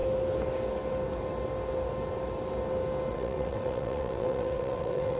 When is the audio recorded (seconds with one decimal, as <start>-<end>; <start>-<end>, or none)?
0.0-3.1